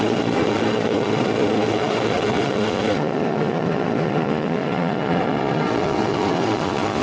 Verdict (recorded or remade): remade